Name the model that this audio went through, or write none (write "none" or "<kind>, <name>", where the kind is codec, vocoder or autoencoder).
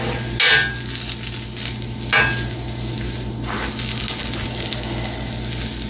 none